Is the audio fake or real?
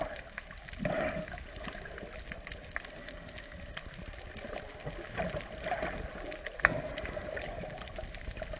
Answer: real